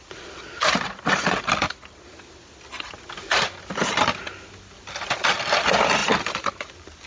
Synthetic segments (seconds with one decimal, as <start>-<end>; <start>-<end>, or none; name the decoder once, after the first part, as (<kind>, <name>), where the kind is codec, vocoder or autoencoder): none